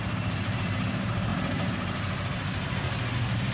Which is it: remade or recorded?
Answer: remade